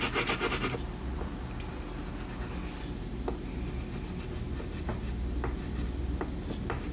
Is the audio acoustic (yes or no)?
yes